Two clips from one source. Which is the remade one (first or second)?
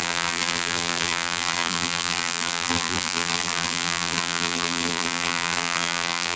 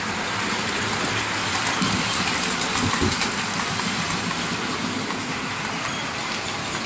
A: first